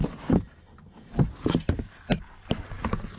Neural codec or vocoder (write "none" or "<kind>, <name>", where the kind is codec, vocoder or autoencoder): none